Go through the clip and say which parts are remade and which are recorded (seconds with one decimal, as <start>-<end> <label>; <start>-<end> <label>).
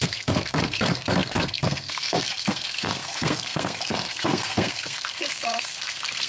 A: 0.0-6.3 remade